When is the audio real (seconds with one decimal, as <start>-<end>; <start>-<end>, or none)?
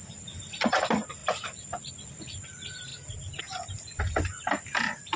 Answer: 0.0-5.2